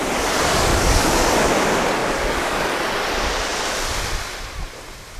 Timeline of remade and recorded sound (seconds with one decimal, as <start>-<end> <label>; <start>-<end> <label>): 0.0-0.7 recorded; 0.7-1.5 remade; 1.5-2.0 recorded; 2.0-2.8 remade; 2.8-5.2 recorded